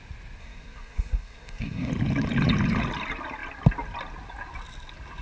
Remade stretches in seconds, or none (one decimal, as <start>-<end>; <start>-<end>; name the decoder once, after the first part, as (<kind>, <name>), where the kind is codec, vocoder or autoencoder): 0.4-1.9 (codec, SNAC)

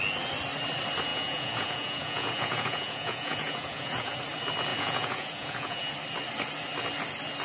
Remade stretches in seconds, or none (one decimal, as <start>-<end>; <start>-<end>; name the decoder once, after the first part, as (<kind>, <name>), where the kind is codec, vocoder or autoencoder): 1.1-4.1 (vocoder, Vocos); 4.7-5.9